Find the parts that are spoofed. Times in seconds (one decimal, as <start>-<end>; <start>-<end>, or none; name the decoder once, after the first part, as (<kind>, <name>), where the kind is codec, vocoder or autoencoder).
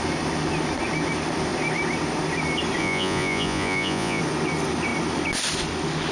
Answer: 2.8-4.2 (vocoder, Vocos)